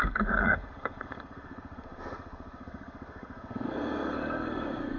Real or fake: fake